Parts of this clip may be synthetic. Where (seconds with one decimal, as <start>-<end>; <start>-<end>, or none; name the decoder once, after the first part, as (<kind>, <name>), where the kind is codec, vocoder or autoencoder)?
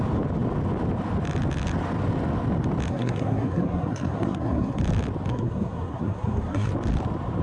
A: 2.9-4.8 (codec, SNAC); 5.3-6.7